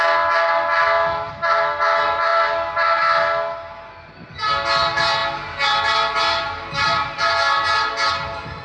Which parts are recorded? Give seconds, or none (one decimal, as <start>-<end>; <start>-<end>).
0.0-8.6